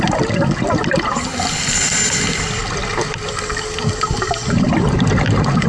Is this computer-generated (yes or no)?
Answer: no